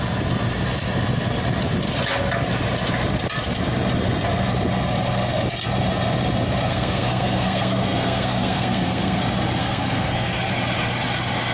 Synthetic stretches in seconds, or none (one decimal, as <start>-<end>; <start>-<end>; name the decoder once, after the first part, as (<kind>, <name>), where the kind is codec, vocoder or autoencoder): 6.7-9.2 (codec, SNAC); 9.6-10.5